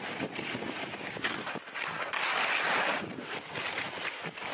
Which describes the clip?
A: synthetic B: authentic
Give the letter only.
B